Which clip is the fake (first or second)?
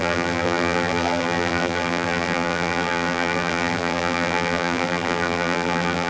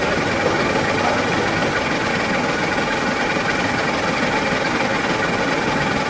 first